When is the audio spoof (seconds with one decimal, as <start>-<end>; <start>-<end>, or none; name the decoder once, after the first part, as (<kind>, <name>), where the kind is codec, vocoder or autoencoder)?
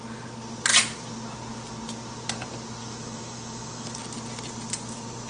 2.8-3.9 (autoencoder, DAC-VAE)